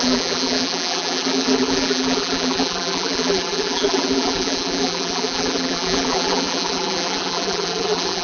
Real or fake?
fake